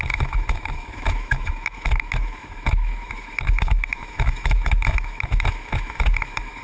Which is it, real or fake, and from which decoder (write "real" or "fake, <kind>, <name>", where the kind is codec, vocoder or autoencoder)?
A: fake, autoencoder, DAC-VAE